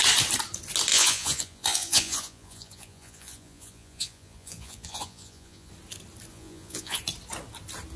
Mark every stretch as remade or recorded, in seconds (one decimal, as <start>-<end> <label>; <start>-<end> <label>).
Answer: 0.0-0.9 recorded; 0.9-5.7 remade; 5.7-6.3 recorded; 6.3-7.0 remade; 7.0-8.0 recorded